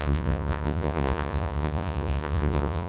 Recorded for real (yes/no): no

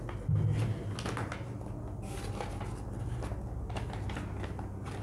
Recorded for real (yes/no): yes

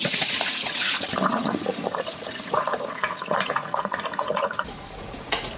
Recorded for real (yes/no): no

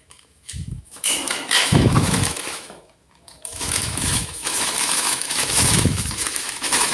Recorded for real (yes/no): no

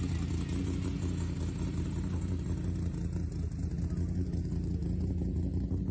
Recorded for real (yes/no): yes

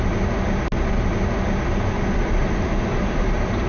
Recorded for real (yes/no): yes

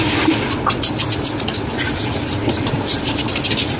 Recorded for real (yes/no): yes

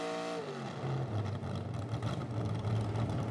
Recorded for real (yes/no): yes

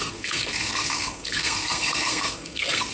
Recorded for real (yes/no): no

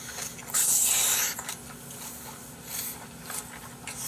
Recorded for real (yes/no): yes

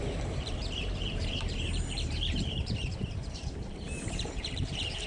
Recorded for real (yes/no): no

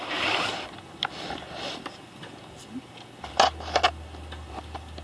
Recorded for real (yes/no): yes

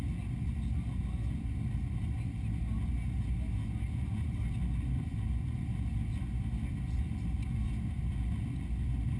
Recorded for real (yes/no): yes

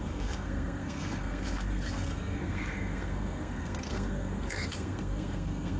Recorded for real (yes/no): no